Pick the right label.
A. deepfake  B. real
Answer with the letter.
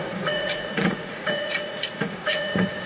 A